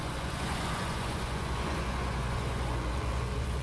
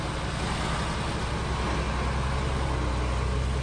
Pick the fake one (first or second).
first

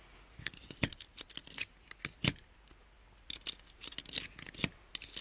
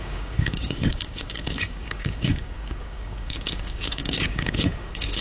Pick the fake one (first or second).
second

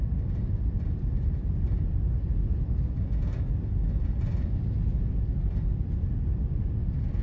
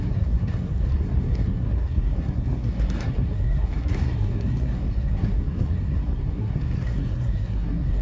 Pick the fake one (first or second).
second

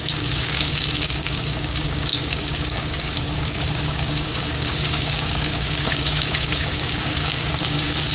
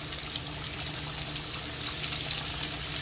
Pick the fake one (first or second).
first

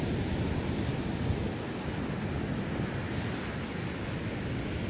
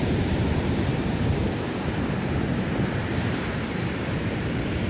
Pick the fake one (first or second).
second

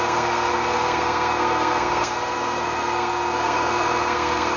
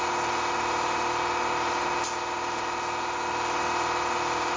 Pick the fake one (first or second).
first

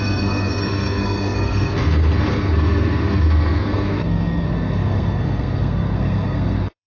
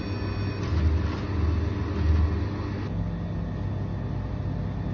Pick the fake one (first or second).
first